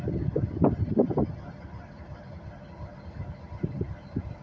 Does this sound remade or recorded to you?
recorded